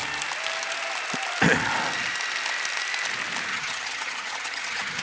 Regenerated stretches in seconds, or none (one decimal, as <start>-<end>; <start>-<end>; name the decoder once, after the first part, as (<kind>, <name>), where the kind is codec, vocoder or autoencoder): 3.5-5.0 (vocoder, HiFi-GAN)